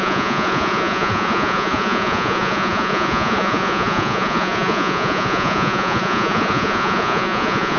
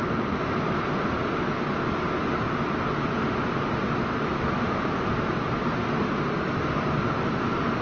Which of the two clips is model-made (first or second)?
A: first